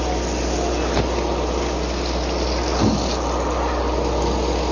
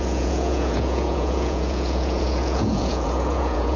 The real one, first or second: first